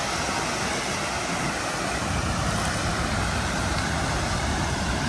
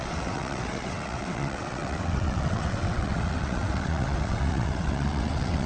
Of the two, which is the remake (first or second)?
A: second